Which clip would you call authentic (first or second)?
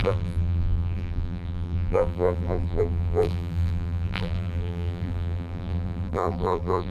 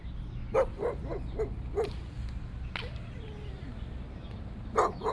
second